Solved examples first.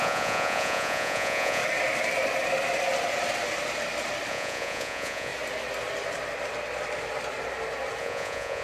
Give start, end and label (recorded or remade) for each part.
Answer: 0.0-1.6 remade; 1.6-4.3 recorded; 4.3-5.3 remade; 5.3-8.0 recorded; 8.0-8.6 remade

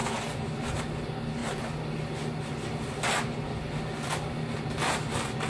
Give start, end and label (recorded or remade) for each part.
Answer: 0.0-5.5 recorded

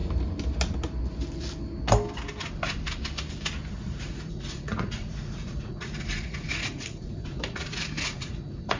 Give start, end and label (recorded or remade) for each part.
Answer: 0.0-3.7 recorded; 3.7-8.8 remade

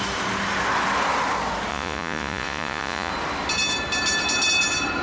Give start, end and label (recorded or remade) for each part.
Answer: 0.0-1.7 recorded; 1.7-3.1 remade; 3.1-5.0 recorded

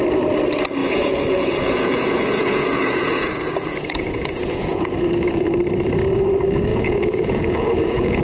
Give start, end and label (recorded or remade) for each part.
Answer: 0.0-0.8 recorded; 0.8-4.9 remade; 4.9-6.7 recorded; 6.7-8.2 remade

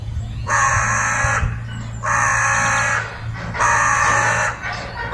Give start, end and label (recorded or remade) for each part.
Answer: 0.0-0.7 remade; 0.7-5.1 recorded